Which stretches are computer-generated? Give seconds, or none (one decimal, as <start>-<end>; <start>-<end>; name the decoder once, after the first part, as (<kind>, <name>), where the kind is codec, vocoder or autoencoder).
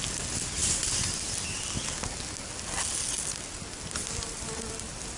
none